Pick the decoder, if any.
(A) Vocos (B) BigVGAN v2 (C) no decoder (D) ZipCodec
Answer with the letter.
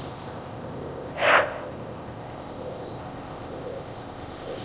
D